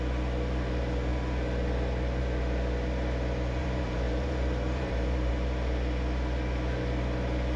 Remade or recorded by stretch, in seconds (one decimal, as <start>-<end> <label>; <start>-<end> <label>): 0.0-3.6 recorded; 3.6-5.3 remade; 5.3-7.6 recorded